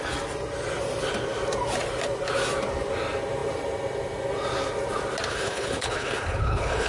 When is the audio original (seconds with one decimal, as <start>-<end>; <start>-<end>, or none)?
0.0-5.3